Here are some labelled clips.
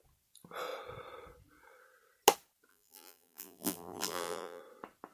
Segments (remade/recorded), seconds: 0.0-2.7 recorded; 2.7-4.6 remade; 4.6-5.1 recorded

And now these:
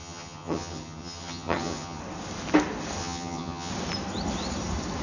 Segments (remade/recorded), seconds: 0.0-2.0 remade; 2.0-3.0 recorded; 3.0-3.7 remade; 3.7-5.0 recorded

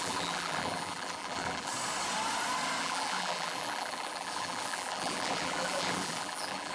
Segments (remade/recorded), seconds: 0.0-1.7 remade; 1.7-2.8 recorded; 2.8-6.7 remade

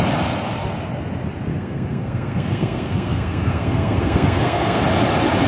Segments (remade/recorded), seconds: 0.0-1.5 recorded; 1.5-4.8 remade; 4.8-5.5 recorded

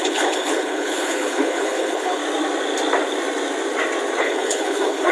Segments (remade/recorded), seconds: 0.0-2.2 remade; 2.2-4.2 recorded; 4.2-5.1 remade